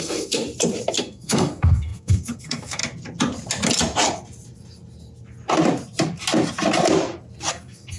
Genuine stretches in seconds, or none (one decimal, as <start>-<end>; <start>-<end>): 0.4-1.0; 2.8-7.5

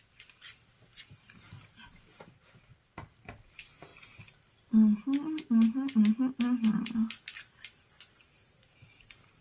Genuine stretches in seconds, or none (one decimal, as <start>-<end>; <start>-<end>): 0.0-9.4

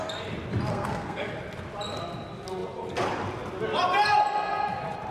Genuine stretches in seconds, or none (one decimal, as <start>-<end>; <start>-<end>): 0.0-0.7; 1.3-5.1

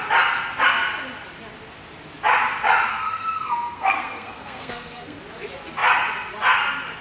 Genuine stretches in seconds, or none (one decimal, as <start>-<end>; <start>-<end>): 0.0-2.9; 5.2-7.0

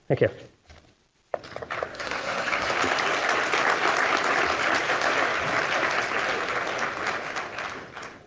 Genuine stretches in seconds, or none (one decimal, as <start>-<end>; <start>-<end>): 0.0-1.9; 2.7-8.3